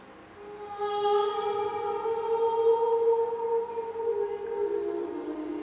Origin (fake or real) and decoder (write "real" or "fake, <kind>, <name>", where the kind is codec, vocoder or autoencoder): real